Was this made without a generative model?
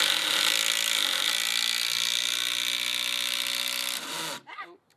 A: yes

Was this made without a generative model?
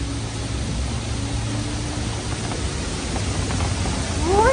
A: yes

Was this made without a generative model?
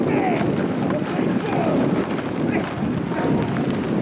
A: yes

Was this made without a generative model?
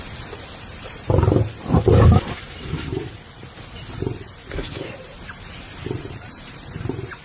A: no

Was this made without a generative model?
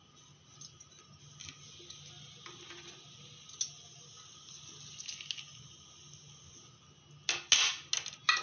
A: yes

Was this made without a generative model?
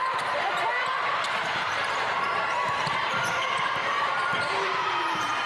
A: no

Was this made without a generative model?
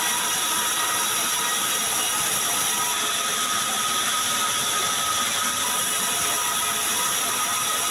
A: yes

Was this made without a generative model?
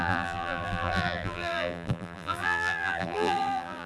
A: no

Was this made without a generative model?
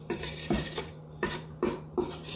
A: no